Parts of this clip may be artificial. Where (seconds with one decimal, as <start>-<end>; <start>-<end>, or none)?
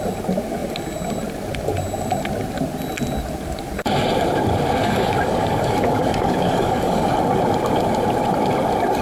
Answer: 4.8-7.1